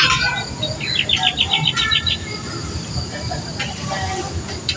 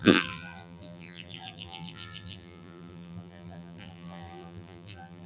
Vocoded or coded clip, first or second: second